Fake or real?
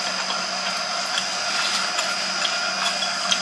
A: real